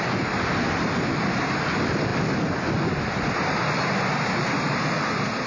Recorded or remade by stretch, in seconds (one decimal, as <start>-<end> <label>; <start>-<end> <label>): 0.0-5.5 recorded